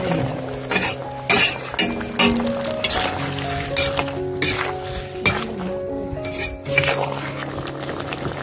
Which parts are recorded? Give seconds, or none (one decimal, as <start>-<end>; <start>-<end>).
0.0-8.4

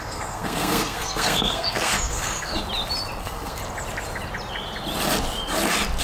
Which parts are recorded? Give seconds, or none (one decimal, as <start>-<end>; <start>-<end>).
2.5-3.2; 3.6-6.0

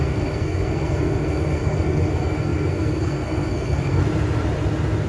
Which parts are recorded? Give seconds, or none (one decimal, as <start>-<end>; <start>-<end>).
4.0-5.1

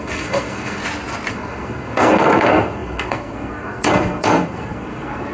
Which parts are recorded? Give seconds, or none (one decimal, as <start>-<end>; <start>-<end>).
0.8-1.3

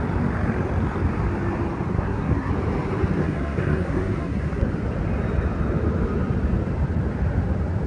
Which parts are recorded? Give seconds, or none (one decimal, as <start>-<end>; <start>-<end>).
0.0-1.9; 2.5-3.2; 4.7-7.9

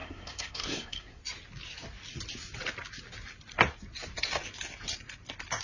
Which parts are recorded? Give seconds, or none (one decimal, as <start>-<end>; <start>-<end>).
1.2-5.6

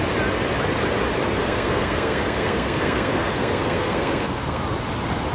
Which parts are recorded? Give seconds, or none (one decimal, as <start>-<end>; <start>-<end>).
0.0-1.4; 4.6-5.3